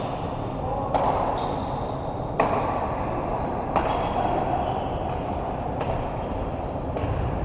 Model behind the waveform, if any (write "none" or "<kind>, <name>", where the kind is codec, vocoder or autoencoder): none